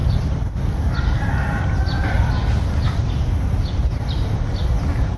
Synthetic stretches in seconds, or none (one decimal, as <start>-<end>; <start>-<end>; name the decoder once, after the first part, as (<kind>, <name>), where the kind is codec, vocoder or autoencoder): none